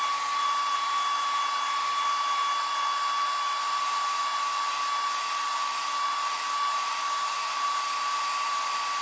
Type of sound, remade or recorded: recorded